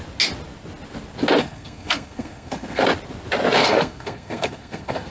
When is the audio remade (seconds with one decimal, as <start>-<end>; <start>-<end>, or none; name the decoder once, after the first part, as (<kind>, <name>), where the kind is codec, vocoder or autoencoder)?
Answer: 1.4-2.8 (codec, SNAC); 3.6-5.1